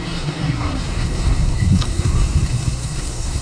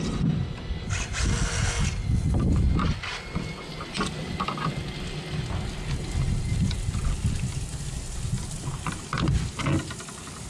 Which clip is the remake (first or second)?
first